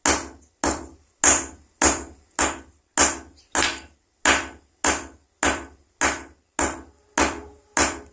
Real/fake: real